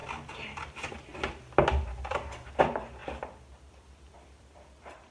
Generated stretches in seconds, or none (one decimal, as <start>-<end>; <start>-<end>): 2.6-3.0; 3.7-5.1